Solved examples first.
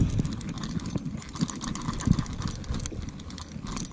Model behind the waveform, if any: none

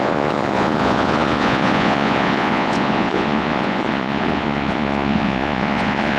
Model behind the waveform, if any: vocoder, Vocos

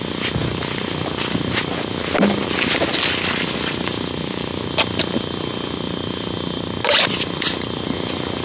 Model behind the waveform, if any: none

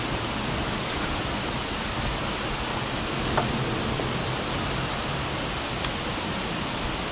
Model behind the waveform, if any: none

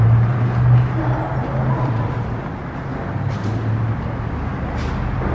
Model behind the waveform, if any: none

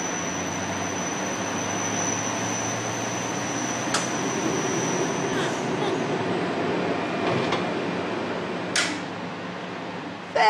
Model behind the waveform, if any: none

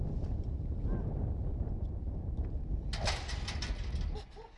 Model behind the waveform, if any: none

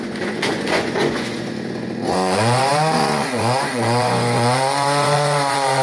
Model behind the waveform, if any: vocoder, Vocos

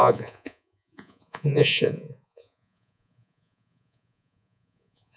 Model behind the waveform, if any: vocoder, Vocos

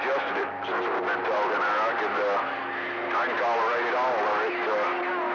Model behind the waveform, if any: none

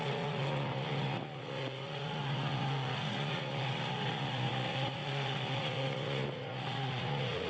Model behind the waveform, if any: vocoder, Vocos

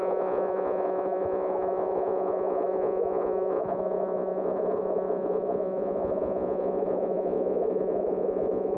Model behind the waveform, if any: vocoder, Vocos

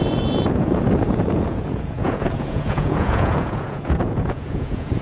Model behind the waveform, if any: vocoder, Vocos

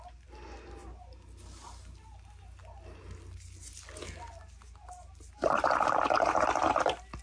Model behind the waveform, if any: none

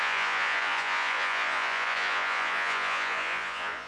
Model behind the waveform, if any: vocoder, Vocos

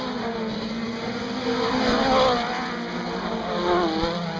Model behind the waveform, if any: none